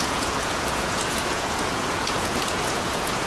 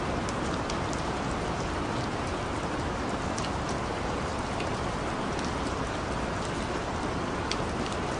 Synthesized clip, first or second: first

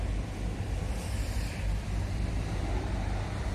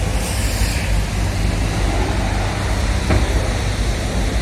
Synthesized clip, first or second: first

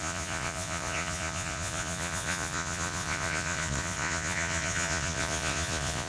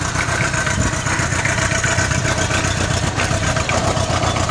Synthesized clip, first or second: first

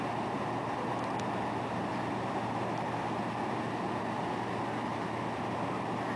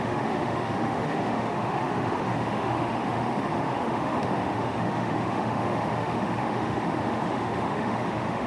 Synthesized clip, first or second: second